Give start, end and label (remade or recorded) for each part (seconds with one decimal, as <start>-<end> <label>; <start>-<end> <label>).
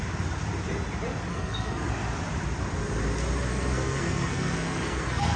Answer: 0.0-1.3 recorded; 1.3-1.9 remade; 1.9-3.5 recorded; 3.5-5.4 remade